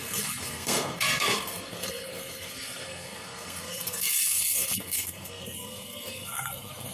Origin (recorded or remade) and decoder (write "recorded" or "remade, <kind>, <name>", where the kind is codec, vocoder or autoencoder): remade, codec, SNAC